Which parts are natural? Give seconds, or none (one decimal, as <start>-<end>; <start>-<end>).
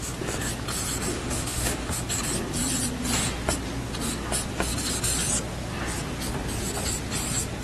0.0-1.1; 2.0-7.6